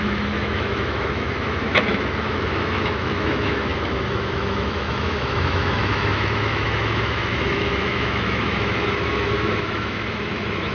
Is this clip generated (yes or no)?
yes